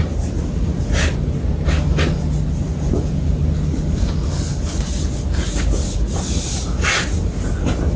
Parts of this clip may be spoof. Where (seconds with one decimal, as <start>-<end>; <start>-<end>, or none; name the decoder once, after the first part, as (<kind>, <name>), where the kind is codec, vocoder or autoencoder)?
2.7-3.4 (vocoder, Vocos)